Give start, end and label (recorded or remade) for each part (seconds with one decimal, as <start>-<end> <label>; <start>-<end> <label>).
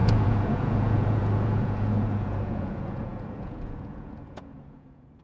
0.0-5.2 remade